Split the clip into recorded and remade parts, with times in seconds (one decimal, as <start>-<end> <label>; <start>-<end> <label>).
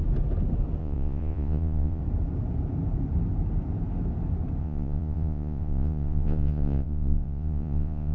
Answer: 0.0-0.8 recorded; 0.8-2.0 remade; 2.0-4.6 recorded; 4.6-8.1 remade